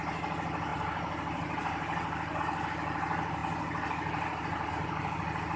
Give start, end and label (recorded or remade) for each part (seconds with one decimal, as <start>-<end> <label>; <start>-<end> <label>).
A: 0.0-5.6 recorded